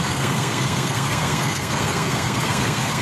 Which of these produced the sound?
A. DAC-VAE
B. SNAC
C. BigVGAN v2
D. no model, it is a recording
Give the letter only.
B